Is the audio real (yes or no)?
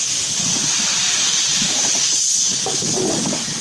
yes